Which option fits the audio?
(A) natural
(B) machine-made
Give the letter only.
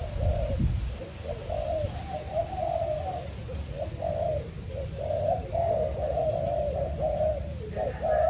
A